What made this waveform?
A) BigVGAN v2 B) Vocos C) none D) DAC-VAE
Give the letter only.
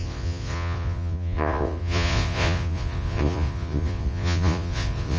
B